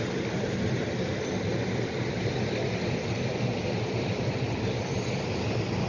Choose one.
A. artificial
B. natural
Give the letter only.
B